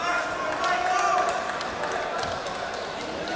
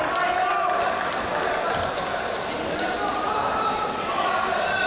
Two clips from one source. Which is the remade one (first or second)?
second